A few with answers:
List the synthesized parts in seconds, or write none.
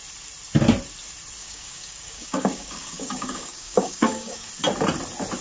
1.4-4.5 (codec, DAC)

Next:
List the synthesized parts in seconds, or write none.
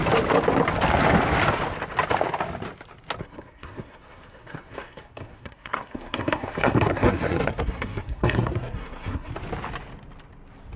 3.2-9.3 (codec, SNAC)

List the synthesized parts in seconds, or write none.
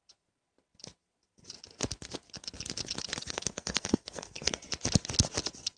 3.2-4.6 (codec, SNAC)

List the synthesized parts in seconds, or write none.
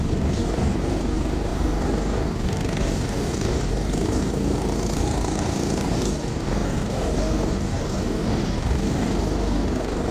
0.0-10.1 (codec, DAC)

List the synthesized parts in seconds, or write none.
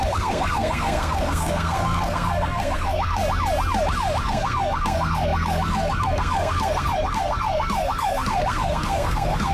0.0-3.2 (codec, SNAC); 4.2-9.5